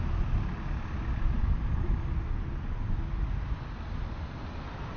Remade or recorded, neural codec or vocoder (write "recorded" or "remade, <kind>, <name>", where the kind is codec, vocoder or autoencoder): recorded